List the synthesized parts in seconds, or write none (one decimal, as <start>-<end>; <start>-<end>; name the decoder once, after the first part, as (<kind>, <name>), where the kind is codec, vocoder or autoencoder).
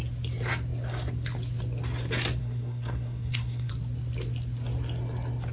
2.4-3.7 (codec, SNAC)